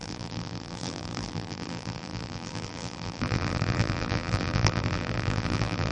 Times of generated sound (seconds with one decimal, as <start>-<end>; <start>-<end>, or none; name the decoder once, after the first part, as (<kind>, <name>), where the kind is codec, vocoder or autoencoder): 0.0-5.9 (vocoder, BigVGAN v2)